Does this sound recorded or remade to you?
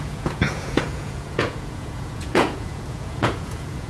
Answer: remade